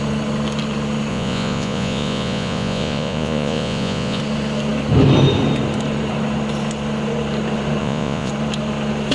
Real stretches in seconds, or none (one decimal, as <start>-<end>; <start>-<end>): 0.0-1.1; 4.2-7.8; 8.3-9.1